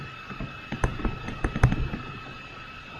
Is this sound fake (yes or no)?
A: no